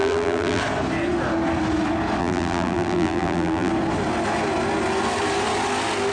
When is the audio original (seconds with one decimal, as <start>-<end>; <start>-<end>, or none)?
0.6-2.2; 3.7-6.1